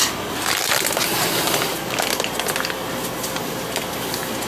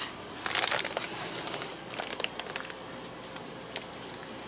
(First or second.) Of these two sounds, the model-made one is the second